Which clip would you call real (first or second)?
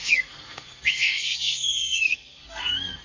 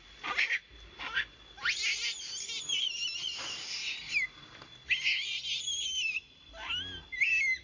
second